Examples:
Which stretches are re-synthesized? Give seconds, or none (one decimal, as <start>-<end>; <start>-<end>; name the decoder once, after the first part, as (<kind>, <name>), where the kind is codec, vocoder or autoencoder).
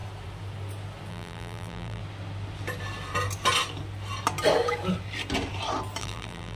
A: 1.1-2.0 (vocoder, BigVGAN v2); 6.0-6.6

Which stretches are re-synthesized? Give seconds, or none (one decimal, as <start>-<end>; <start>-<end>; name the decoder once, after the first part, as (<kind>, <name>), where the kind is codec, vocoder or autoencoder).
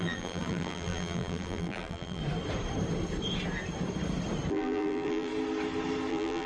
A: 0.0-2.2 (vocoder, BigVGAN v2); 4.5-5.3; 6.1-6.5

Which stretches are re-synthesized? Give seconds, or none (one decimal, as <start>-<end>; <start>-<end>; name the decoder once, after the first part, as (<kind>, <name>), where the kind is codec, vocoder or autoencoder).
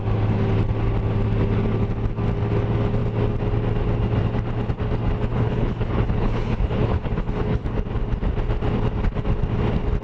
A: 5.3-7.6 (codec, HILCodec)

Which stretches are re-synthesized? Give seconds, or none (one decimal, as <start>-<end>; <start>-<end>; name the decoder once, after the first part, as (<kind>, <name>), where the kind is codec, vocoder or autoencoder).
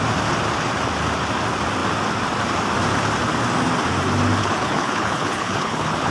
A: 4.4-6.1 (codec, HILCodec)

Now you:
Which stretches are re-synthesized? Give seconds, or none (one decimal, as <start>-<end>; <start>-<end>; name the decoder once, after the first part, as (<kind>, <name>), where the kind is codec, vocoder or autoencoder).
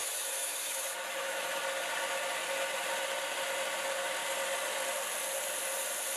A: 0.0-1.6 (autoencoder, DAC-VAE)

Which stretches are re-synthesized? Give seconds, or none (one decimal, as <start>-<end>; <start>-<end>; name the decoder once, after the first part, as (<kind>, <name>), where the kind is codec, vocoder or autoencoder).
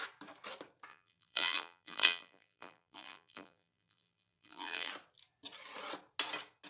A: 0.9-4.9 (vocoder, BigVGAN v2)